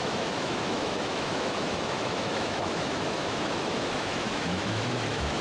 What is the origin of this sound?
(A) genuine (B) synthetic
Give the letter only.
B